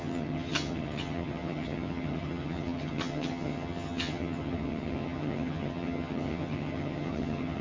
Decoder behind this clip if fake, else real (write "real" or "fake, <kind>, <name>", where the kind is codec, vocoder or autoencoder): fake, vocoder, HiFi-GAN